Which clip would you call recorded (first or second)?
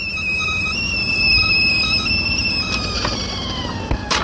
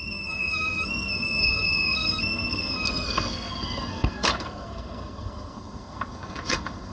first